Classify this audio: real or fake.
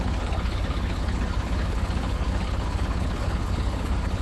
fake